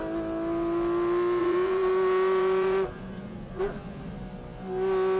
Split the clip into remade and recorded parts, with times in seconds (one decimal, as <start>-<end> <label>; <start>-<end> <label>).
0.0-1.4 recorded; 1.4-4.0 remade; 4.0-5.2 recorded